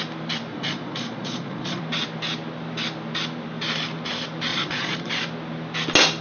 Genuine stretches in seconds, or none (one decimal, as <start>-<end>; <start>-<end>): 0.0-0.5; 1.8-4.5; 5.1-6.2